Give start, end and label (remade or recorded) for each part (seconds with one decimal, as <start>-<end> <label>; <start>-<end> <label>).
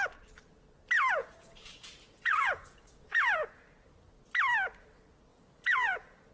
0.0-1.2 recorded; 1.2-3.6 remade; 3.6-5.3 recorded; 5.3-6.3 remade